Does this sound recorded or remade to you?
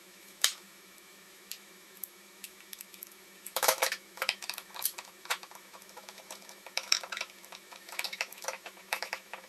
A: remade